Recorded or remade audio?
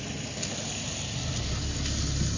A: recorded